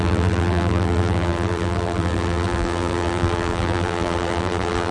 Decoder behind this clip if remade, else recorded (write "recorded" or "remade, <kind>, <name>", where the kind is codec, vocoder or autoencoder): remade, vocoder, BigVGAN v2